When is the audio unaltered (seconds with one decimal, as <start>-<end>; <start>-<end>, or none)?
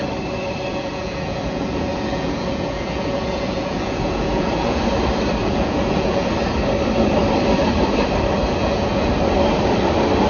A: 0.0-0.7; 4.8-5.4; 6.3-8.6; 9.1-10.3